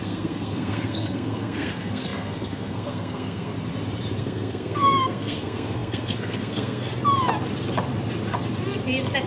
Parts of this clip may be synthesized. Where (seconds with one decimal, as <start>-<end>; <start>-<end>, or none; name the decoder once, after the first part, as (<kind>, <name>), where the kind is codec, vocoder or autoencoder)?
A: 0.0-3.5 (codec, SNAC); 4.2-6.9